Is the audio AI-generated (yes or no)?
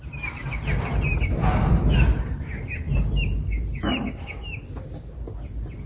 no